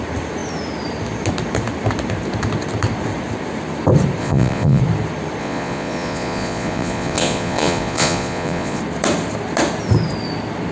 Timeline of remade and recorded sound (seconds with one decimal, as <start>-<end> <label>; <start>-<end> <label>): 0.0-4.2 recorded; 4.2-4.8 remade; 4.8-5.4 recorded; 5.4-8.8 remade; 8.8-10.7 recorded